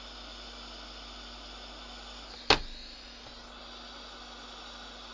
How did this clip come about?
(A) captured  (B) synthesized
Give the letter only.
A